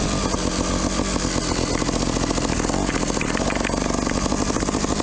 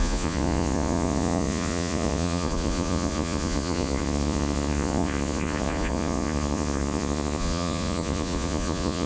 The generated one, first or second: second